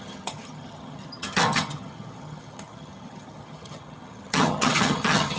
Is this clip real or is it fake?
fake